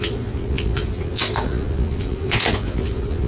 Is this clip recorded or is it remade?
remade